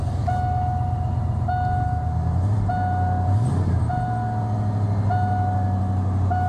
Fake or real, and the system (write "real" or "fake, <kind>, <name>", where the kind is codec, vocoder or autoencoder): real